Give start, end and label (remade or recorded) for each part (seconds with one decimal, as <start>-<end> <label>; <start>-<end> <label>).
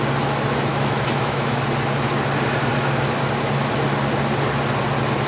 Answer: 0.0-0.7 recorded; 0.7-1.6 remade; 1.6-5.3 recorded